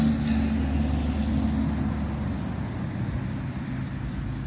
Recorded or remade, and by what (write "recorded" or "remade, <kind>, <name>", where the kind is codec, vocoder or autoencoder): recorded